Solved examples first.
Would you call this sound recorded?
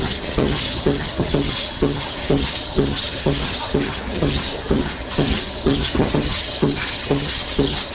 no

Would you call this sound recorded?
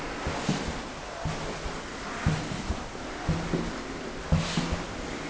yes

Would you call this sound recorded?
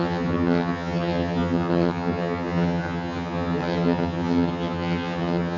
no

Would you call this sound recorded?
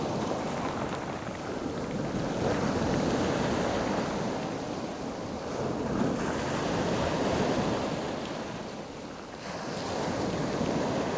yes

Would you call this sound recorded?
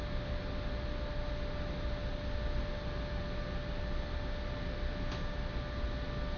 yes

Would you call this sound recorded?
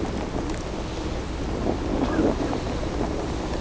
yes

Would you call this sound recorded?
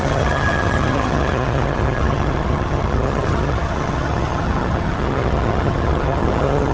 no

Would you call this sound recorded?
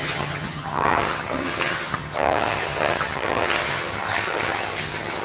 no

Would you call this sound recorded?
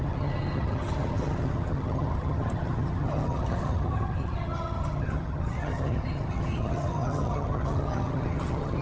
no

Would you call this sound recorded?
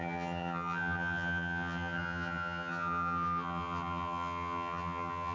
no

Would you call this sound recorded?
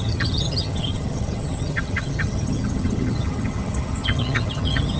no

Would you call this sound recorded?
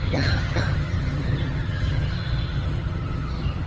no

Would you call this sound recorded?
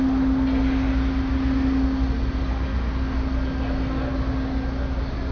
yes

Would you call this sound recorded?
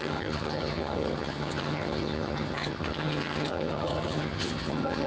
no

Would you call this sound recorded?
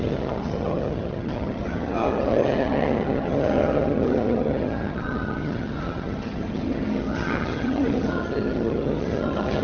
no